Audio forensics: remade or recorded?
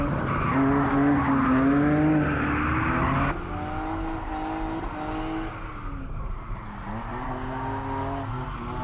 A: recorded